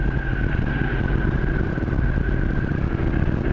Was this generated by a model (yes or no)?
no